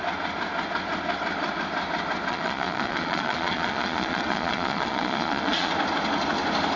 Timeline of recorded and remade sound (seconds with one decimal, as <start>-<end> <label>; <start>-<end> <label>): 0.0-2.3 recorded; 2.3-5.7 remade; 5.7-6.8 recorded